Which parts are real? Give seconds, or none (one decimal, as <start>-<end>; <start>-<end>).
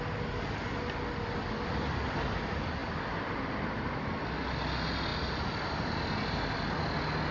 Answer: 0.0-7.3